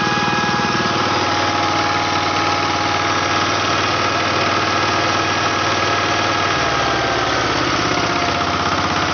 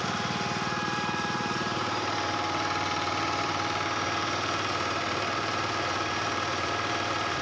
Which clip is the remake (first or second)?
second